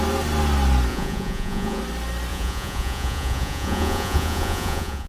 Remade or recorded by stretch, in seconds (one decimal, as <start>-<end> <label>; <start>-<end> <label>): 0.0-0.9 recorded; 0.9-1.8 remade; 1.8-2.3 recorded; 2.3-5.1 remade